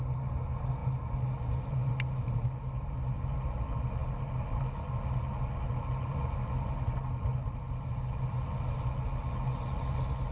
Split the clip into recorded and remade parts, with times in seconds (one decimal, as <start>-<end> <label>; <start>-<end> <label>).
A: 0.0-10.3 recorded